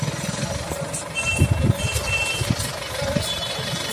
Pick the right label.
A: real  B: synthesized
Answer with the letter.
A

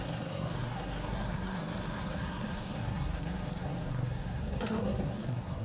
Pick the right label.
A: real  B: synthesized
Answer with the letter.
B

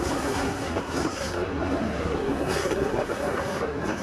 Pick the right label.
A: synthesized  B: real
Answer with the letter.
A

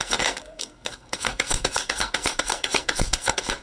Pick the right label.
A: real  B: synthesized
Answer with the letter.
B